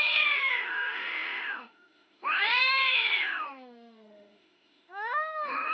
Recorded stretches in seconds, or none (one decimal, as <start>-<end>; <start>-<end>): none